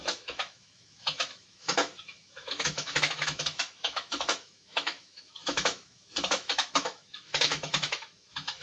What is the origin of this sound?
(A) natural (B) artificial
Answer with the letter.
B